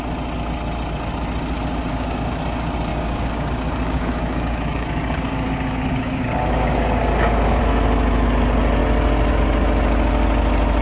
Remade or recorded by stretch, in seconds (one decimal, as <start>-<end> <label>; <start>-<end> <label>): 0.0-1.9 recorded; 1.9-2.4 remade; 2.4-2.9 recorded; 2.9-7.6 remade; 7.6-10.8 recorded